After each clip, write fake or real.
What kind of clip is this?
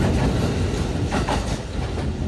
real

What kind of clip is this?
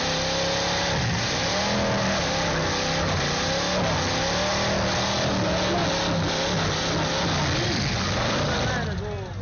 real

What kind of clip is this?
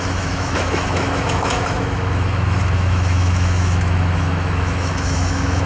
fake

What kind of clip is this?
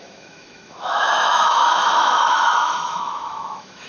fake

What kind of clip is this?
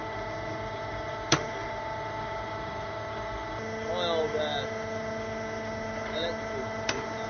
real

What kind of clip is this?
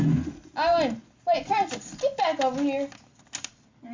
real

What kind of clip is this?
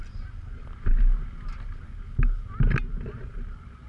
real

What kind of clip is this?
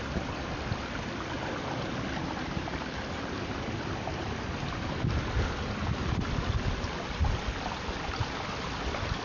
real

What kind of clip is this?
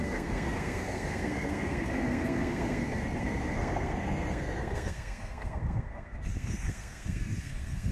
fake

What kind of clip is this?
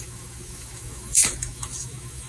fake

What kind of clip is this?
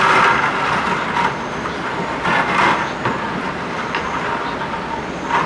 real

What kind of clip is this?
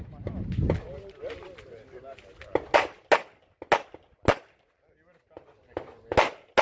real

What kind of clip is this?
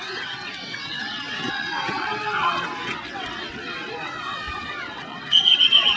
fake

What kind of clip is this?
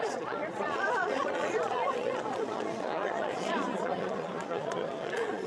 fake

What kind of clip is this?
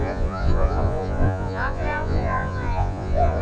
fake